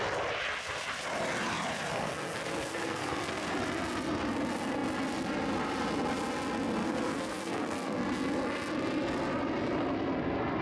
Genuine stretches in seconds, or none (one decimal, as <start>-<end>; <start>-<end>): 0.0-1.9; 3.5-6.8; 8.0-10.6